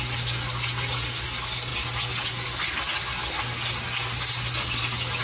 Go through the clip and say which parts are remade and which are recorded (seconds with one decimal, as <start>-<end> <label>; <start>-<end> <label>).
0.0-5.2 recorded